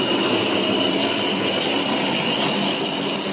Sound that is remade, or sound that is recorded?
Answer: recorded